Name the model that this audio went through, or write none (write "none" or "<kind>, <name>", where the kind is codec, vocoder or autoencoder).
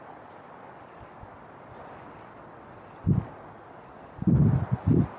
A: none